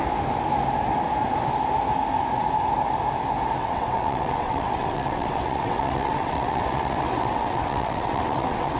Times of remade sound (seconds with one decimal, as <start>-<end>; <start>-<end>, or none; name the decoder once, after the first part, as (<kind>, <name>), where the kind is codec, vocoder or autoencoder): 3.6-8.8 (vocoder, WaveNeXt)